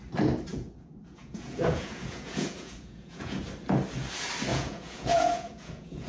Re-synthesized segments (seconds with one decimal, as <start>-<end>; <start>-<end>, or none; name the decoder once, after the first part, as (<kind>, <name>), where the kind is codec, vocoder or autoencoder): 0.5-3.4 (vocoder, Vocos); 4.5-6.1